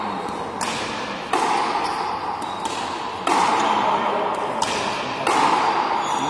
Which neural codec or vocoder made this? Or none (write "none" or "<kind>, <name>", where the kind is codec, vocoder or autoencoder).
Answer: none